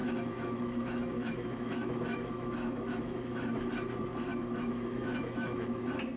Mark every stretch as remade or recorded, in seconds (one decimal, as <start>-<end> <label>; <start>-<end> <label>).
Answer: 0.0-3.7 remade; 3.7-4.3 recorded; 4.3-5.8 remade; 5.8-6.2 recorded